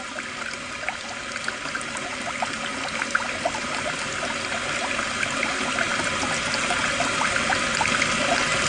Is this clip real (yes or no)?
yes